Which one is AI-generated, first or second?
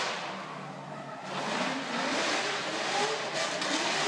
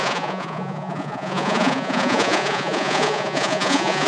second